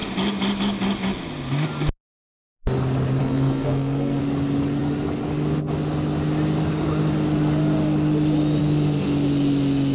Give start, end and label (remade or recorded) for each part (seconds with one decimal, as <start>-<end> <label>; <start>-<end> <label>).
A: 0.0-3.2 recorded; 3.2-4.2 remade; 4.2-9.9 recorded